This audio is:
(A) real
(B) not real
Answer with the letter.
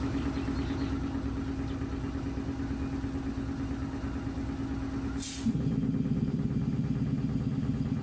A